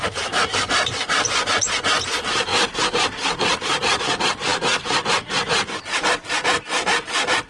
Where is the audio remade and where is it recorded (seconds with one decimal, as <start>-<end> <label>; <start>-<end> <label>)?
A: 0.0-7.5 remade